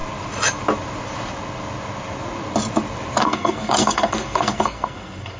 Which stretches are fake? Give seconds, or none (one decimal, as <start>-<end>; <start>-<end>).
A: 3.2-5.4